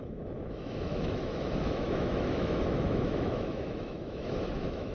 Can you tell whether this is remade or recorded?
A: remade